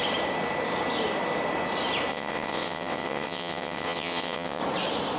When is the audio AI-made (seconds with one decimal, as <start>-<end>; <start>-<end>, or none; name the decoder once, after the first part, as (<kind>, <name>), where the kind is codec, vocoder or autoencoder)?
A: 2.1-4.6 (vocoder, WaveNeXt)